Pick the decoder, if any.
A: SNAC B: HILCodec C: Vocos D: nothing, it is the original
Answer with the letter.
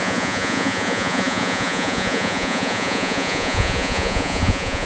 C